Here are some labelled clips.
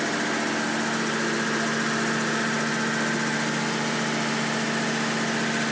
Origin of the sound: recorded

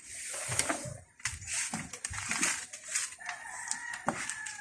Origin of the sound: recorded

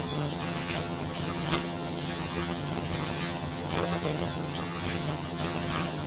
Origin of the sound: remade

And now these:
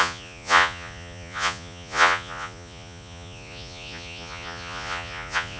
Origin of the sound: remade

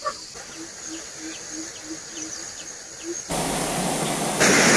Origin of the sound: recorded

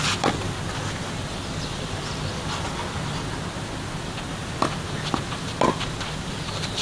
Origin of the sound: recorded